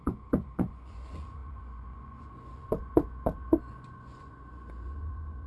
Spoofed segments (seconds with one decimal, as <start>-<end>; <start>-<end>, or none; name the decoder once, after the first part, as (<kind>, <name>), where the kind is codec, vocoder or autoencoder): 0.0-5.5 (vocoder, Vocos)